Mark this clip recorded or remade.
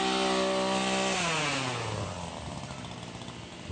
recorded